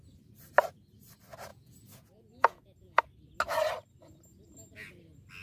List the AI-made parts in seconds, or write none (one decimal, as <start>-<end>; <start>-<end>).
1.5-3.0